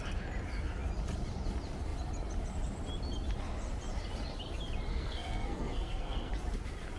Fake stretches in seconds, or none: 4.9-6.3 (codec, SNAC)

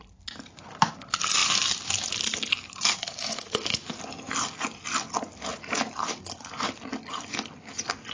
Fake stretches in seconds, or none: 3.2-3.9 (autoencoder, DAC-VAE)